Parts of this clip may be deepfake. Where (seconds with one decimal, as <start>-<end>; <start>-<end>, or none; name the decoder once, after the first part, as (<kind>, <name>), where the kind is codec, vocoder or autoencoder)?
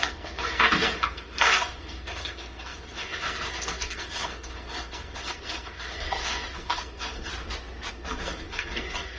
0.0-7.3 (codec, SNAC); 7.9-9.2